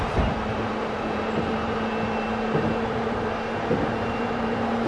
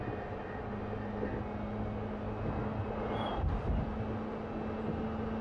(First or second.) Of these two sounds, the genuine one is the second